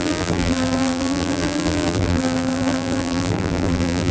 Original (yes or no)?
no